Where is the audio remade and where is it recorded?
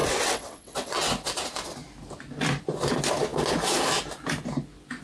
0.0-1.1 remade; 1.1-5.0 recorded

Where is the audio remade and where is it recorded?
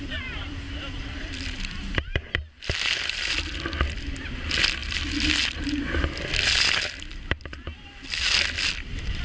0.0-9.2 recorded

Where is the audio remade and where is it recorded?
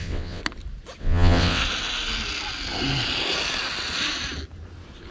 0.0-0.4 remade; 0.4-1.0 recorded; 1.0-1.6 remade; 1.6-5.1 recorded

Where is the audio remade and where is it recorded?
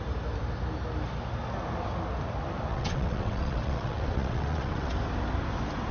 0.0-2.7 recorded; 2.7-4.9 remade; 4.9-5.9 recorded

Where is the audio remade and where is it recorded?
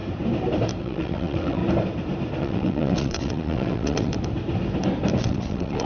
0.0-0.8 recorded; 0.8-1.6 remade; 1.6-2.4 recorded; 2.4-4.1 remade; 4.1-5.2 recorded; 5.2-5.8 remade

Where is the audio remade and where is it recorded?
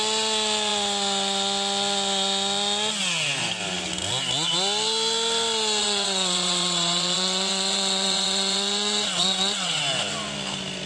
0.0-5.8 recorded; 5.8-9.8 remade; 9.8-10.9 recorded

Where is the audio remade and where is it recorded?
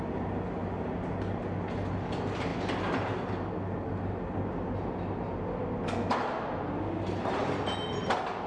0.0-8.5 recorded